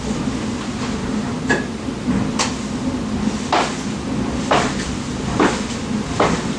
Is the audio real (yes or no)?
yes